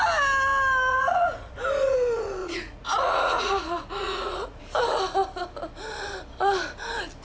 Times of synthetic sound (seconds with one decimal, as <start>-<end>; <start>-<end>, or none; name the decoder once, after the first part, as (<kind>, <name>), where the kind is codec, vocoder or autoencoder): 0.9-1.5 (vocoder, Vocos); 2.4-4.6